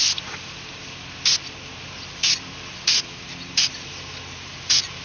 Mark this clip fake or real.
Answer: real